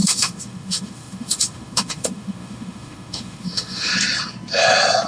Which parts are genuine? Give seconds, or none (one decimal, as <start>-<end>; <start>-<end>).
3.9-5.1